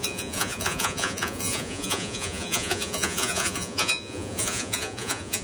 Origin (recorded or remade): remade